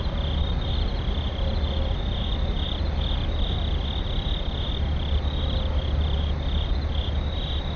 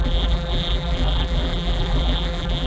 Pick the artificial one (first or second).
second